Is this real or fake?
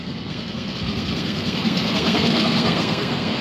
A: fake